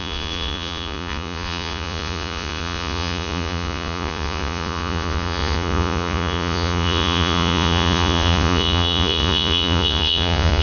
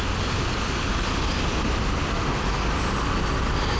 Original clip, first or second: second